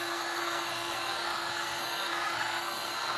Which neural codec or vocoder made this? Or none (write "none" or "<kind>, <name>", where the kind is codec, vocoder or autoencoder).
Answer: codec, SNAC